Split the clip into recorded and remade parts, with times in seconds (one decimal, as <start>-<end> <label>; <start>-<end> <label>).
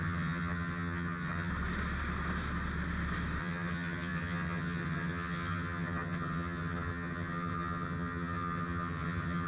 0.0-1.5 remade; 1.5-3.4 recorded; 3.4-9.5 remade